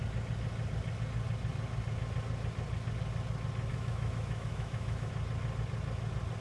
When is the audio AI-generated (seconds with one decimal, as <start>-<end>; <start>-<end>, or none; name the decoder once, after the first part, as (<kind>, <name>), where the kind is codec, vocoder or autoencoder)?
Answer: 3.7-5.1 (autoencoder, DAC-VAE)